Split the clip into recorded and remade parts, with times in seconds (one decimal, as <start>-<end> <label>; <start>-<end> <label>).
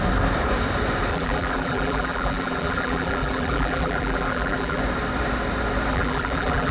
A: 0.0-1.1 recorded; 1.1-4.8 remade; 4.8-5.9 recorded; 5.9-6.7 remade